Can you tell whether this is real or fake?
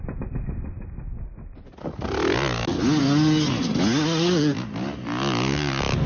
real